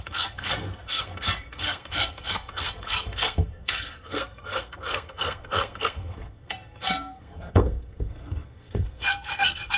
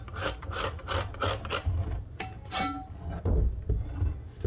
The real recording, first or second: second